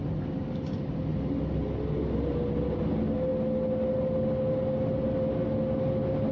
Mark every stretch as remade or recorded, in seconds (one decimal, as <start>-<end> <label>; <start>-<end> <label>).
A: 0.0-6.3 recorded